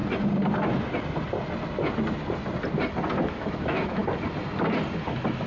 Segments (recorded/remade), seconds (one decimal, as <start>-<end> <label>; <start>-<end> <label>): 0.0-3.3 recorded; 3.3-4.0 remade; 4.0-5.0 recorded; 5.0-5.5 remade